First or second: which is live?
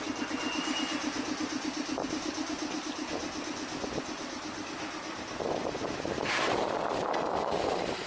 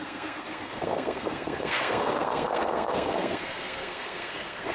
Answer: first